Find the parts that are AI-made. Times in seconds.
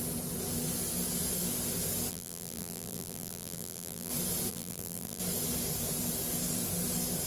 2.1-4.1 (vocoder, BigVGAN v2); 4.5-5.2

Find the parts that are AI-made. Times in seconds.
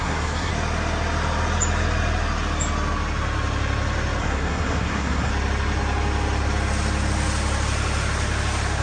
0.0-0.5 (codec, SNAC); 4.2-5.3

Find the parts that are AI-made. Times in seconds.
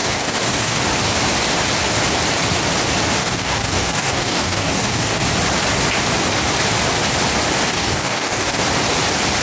0.0-0.8 (codec, DAC); 3.2-5.2; 7.7-8.6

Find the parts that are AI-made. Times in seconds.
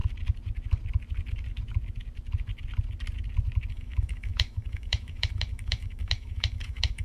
3.7-7.0 (autoencoder, DAC-VAE)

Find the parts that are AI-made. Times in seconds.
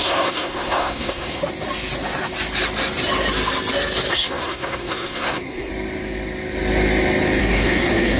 0.0-1.4 (codec, SNAC); 4.1-5.7; 7.4-8.2